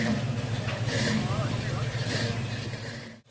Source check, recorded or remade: recorded